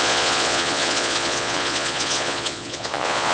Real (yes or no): no